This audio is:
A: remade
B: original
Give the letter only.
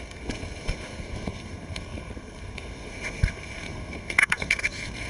A